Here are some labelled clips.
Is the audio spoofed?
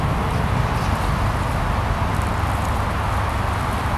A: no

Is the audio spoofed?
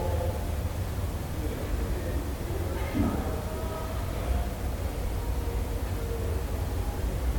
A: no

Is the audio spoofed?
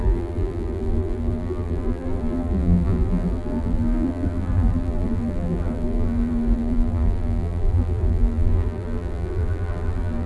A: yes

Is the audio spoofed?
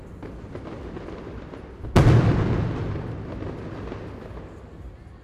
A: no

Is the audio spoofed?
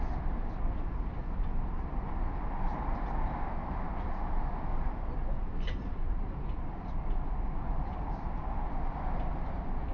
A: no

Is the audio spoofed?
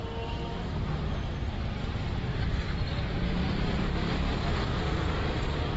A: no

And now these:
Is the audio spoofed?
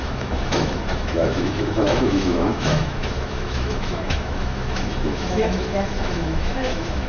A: yes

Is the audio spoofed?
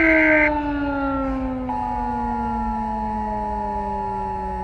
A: no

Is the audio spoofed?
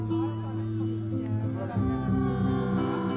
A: no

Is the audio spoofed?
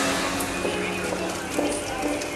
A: no